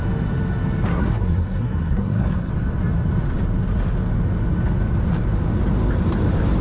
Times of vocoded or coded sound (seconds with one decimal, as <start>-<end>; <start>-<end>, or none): 0.9-2.5